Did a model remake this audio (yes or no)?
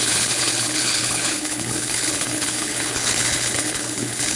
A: yes